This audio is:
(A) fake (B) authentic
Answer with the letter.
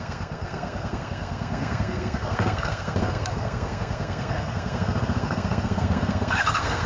A